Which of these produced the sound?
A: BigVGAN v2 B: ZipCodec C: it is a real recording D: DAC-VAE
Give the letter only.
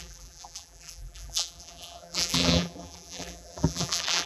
A